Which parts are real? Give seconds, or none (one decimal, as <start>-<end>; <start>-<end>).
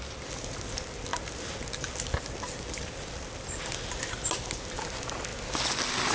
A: 0.0-6.1